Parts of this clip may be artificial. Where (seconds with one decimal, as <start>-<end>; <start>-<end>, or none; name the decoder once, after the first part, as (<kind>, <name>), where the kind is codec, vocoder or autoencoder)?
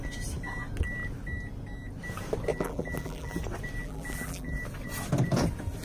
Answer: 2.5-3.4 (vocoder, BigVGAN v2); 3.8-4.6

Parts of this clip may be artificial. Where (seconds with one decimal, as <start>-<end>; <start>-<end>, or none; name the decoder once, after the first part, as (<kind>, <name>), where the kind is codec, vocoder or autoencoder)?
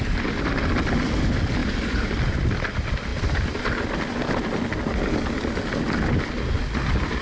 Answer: none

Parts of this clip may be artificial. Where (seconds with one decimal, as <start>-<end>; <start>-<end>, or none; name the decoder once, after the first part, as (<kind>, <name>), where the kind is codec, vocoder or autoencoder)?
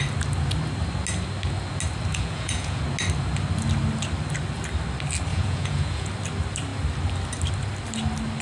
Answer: 2.1-2.8 (vocoder, Vocos); 5.3-6.1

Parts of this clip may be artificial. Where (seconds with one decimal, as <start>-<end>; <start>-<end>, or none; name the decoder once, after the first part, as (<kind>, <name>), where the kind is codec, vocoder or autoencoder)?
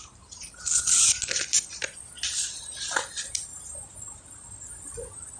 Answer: none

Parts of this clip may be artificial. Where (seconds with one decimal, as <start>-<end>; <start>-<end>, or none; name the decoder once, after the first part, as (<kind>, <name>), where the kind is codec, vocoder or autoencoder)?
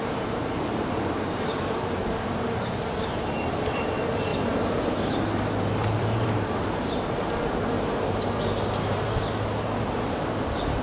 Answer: 0.0-10.8 (vocoder, BigVGAN v2)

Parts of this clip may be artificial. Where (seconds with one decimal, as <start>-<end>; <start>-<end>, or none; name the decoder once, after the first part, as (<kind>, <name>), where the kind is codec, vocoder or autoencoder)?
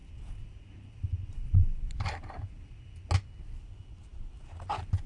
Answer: none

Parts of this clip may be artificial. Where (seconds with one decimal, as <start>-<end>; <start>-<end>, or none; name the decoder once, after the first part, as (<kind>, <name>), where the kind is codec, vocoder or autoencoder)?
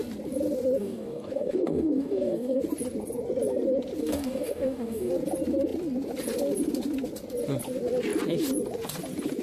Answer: 0.8-2.6 (codec, DAC); 4.0-5.1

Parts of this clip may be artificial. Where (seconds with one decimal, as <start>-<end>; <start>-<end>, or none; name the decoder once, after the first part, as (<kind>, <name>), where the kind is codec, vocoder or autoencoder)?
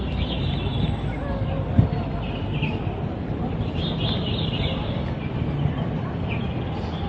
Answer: none